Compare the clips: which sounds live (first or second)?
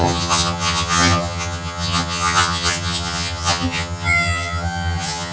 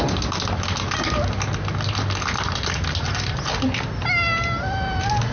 second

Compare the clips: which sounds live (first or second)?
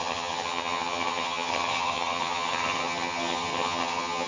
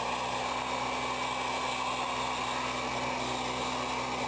second